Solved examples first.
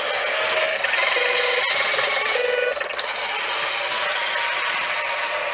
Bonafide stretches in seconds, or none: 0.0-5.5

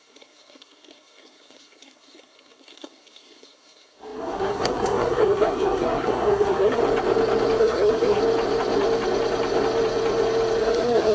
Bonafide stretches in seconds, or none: 6.8-7.6; 8.2-10.6